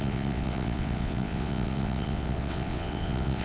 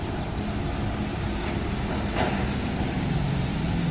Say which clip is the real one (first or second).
second